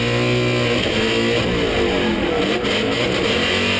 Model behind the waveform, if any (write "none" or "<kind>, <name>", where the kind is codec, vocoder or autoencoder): none